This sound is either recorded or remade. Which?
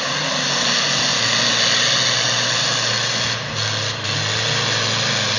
recorded